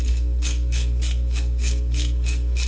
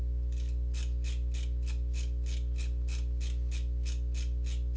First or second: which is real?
second